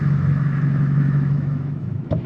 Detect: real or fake fake